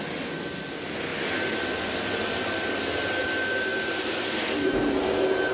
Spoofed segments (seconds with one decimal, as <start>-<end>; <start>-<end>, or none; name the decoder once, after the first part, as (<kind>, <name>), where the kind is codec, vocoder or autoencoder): 3.7-4.7 (vocoder, BigVGAN v2)